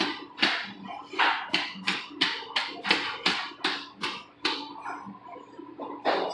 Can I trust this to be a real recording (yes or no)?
no